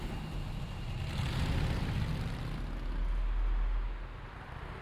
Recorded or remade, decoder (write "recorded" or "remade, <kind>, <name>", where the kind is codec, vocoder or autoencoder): recorded